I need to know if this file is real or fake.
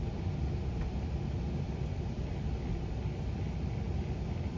real